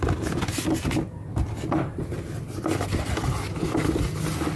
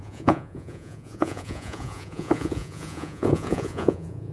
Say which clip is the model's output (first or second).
second